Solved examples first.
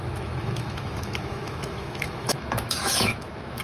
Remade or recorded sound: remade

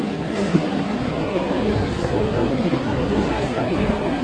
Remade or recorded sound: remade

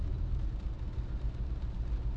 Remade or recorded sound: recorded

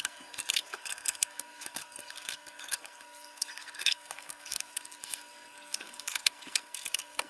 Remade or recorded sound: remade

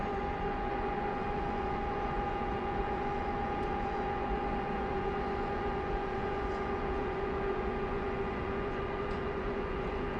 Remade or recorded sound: remade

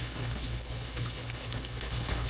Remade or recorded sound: remade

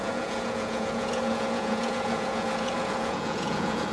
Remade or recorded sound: remade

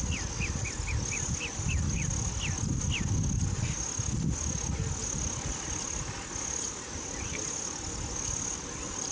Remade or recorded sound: recorded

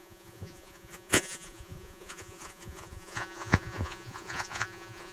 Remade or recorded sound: remade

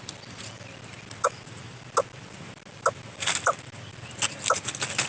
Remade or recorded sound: recorded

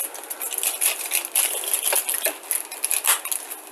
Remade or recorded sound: recorded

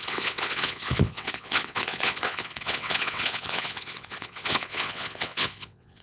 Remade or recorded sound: remade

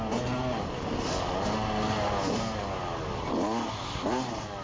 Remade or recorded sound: recorded